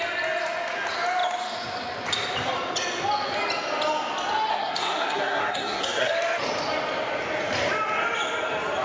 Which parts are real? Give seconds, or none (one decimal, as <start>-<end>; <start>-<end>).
0.0-4.5; 6.1-8.8